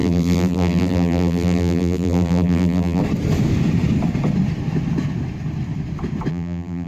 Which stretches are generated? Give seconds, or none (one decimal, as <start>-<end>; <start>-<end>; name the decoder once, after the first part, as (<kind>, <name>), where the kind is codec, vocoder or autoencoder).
0.0-3.0 (vocoder, BigVGAN v2); 6.3-6.9